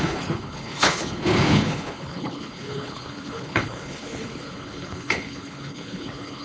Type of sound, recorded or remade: remade